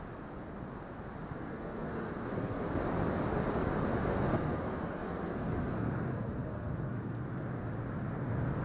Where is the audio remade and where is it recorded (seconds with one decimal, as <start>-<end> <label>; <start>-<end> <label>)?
0.0-1.4 recorded; 1.4-2.7 remade; 2.7-4.1 recorded; 4.1-7.3 remade; 7.3-8.6 recorded